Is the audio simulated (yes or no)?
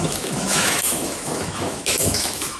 yes